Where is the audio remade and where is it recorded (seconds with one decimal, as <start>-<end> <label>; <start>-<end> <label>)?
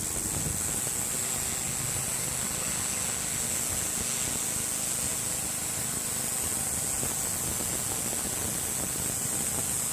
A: 0.0-9.9 recorded